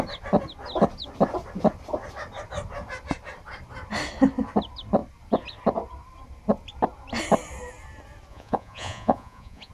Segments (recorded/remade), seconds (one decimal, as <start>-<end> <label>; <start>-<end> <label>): 0.0-8.3 recorded; 8.3-9.7 remade